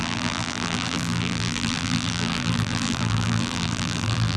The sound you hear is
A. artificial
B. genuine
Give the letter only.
A